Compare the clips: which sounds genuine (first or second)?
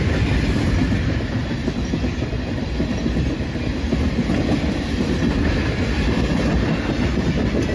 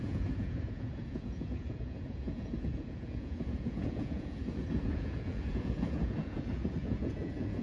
first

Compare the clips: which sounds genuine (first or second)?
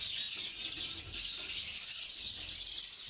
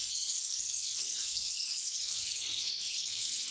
first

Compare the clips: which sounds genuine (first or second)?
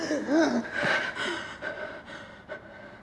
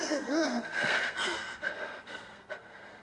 first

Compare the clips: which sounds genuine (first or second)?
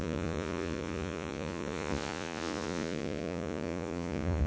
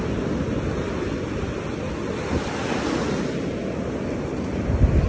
second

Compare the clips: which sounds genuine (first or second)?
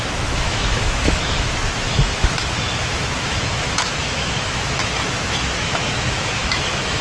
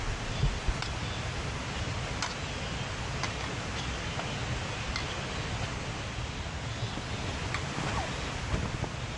second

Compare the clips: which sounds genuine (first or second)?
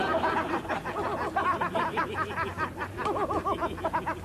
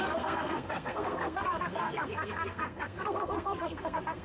first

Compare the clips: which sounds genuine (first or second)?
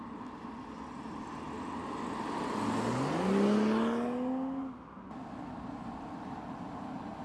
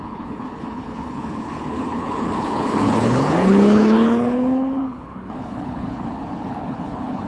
first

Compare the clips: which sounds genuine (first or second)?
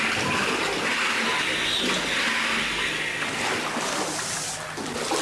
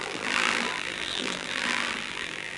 first